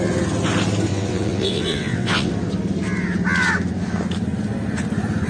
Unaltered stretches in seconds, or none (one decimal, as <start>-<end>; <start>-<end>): 0.0-0.9; 2.3-5.3